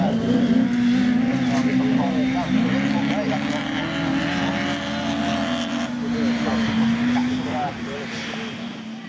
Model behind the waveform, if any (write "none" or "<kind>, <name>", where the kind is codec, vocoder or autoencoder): none